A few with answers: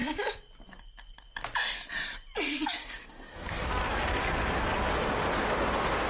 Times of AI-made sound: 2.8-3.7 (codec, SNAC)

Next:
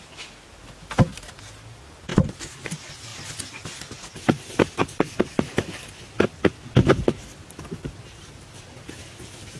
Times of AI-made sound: none

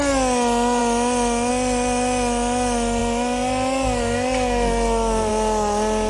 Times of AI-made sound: none

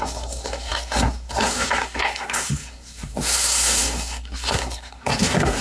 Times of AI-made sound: 0.0-5.6 (codec, SNAC)

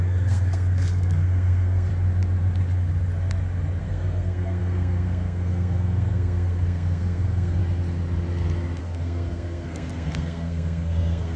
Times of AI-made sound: 0.0-1.9 (codec, SNAC); 3.8-7.6; 8.8-11.4

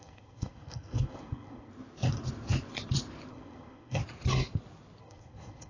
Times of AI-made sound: 0.0-1.7 (codec, SNAC); 3.3-4.0; 5.0-5.7